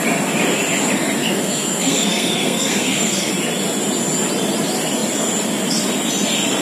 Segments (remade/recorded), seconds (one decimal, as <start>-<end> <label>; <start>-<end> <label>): 0.0-1.2 recorded; 1.2-3.3 remade; 3.3-6.6 recorded